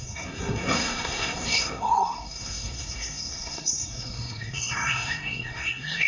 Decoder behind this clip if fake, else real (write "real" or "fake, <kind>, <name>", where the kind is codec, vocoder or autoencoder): fake, codec, SNAC